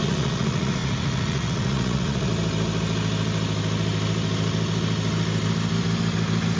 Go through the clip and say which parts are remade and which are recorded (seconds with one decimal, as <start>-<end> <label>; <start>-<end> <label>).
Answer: 0.0-2.3 remade; 2.3-6.6 recorded